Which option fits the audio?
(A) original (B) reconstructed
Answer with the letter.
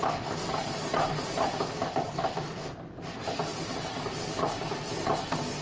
A